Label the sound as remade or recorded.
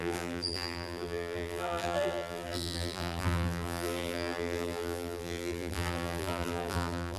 remade